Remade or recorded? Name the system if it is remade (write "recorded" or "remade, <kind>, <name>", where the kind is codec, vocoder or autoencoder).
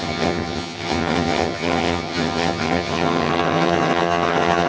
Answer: remade, vocoder, HiFi-GAN